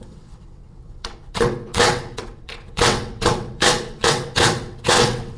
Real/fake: fake